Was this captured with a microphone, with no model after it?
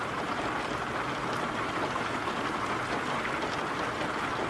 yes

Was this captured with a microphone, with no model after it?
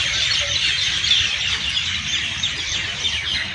yes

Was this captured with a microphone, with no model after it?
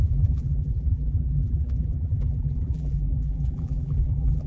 no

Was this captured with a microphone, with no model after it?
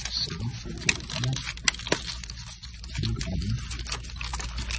yes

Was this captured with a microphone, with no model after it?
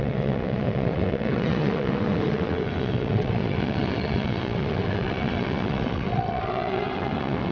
no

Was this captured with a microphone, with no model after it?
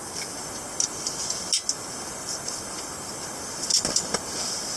yes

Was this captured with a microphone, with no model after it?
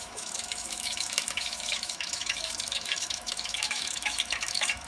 no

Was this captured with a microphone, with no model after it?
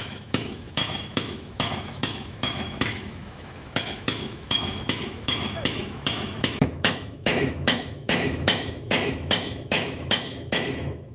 no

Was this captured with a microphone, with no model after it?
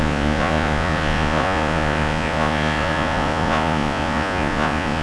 no